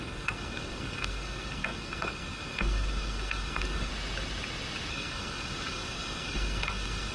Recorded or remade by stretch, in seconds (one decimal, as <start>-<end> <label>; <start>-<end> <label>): 0.0-3.9 remade; 3.9-4.9 recorded; 4.9-7.1 remade